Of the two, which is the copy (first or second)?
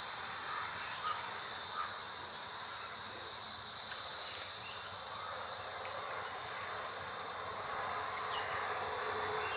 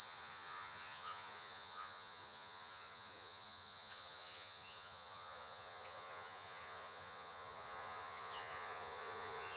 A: second